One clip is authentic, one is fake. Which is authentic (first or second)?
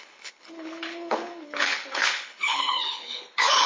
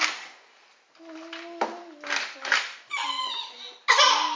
second